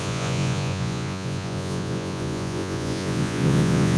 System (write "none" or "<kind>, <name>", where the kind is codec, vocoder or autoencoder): vocoder, Vocos